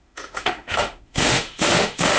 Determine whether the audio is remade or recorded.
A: remade